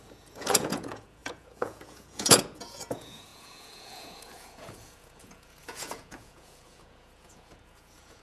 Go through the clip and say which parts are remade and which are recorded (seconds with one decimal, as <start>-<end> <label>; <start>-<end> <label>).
0.0-8.2 remade

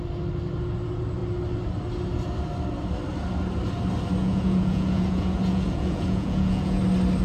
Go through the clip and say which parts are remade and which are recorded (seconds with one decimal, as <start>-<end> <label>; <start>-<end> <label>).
0.0-4.2 recorded; 4.2-6.8 remade; 6.8-7.2 recorded

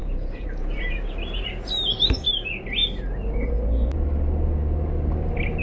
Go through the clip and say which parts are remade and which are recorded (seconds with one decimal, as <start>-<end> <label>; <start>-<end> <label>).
0.0-1.7 remade; 1.7-5.6 recorded

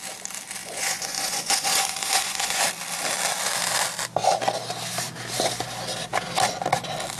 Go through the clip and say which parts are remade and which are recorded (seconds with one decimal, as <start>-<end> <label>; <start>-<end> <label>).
0.0-0.6 recorded; 0.6-2.6 remade; 2.6-7.2 recorded

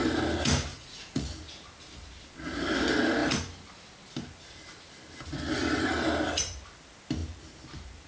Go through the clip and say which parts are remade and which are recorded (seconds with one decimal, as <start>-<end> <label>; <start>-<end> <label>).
0.0-0.7 recorded; 0.7-1.3 remade; 1.3-8.1 recorded

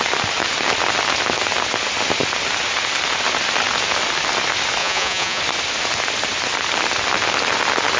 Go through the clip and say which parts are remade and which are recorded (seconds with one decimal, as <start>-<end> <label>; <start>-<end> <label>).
0.0-4.8 recorded; 4.8-5.4 remade; 5.4-8.0 recorded